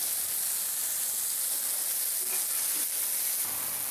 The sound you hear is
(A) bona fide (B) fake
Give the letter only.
A